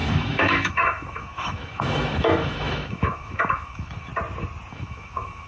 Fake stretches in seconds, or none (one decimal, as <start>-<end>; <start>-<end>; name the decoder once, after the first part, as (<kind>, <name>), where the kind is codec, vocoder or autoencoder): 0.0-4.1 (autoencoder, DAC-VAE); 4.7-5.5